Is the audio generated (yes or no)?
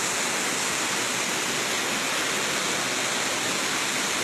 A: no